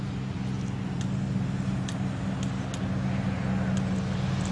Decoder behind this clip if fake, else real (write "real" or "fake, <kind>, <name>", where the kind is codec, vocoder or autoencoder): real